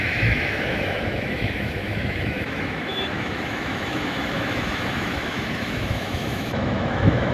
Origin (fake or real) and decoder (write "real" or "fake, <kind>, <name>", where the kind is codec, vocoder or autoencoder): fake, autoencoder, DAC-VAE